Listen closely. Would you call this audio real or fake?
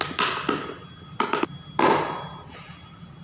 real